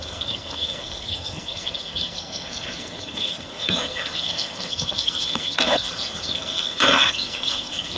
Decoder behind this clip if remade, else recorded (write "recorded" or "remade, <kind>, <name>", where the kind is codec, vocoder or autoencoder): remade, codec, SNAC